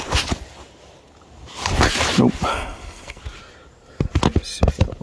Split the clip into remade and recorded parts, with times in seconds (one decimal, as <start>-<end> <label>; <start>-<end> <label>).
0.0-2.5 recorded; 2.5-3.2 remade; 3.2-5.0 recorded